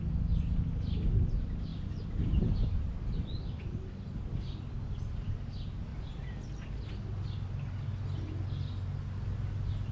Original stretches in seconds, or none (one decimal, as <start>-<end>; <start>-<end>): 0.0-9.9